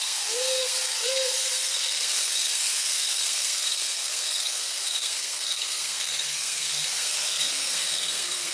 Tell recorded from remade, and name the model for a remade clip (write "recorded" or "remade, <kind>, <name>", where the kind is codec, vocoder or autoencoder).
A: remade, codec, SNAC